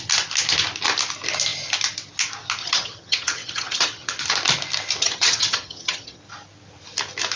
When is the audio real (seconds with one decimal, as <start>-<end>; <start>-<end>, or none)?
0.0-2.6; 4.2-5.0; 6.2-7.4